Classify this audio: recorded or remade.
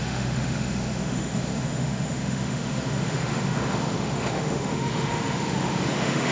remade